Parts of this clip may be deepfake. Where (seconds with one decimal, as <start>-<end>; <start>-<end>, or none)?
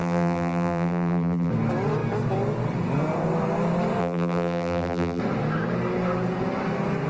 0.0-1.5; 4.0-5.2